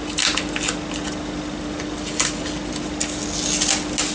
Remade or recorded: recorded